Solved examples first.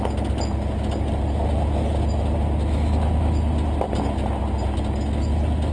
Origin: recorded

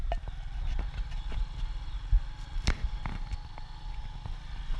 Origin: recorded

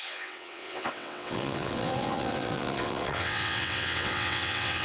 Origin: remade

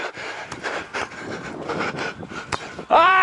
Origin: remade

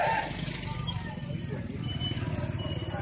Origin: recorded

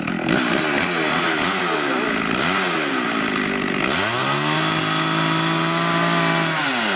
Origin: recorded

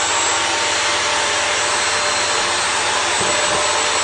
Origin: recorded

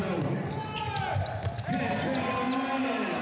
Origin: recorded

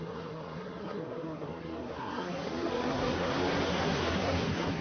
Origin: remade